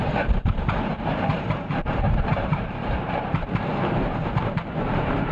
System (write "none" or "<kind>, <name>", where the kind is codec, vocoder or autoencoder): vocoder, BigVGAN v2